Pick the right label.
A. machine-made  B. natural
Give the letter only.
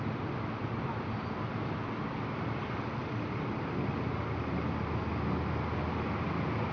B